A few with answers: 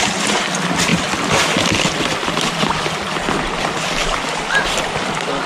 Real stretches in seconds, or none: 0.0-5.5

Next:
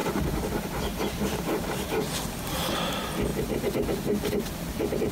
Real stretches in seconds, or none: 0.0-5.1